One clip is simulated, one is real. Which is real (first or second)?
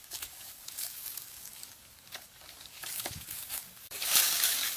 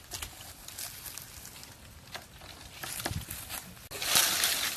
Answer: second